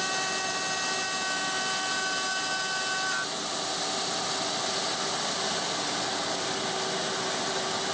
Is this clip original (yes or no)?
yes